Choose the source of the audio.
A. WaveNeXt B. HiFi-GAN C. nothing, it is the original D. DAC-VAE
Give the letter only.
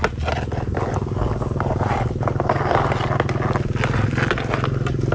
C